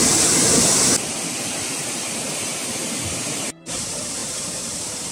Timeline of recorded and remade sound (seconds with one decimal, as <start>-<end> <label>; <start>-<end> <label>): 0.0-3.1 recorded; 3.1-5.1 remade